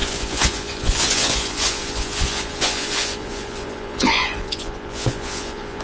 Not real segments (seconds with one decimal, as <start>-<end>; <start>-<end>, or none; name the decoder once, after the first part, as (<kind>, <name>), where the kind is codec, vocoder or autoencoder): 0.0-5.8 (vocoder, Vocos)